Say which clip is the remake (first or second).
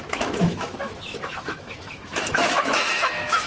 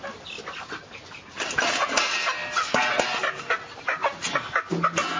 first